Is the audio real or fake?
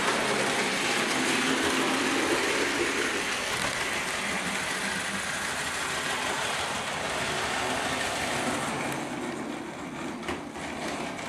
real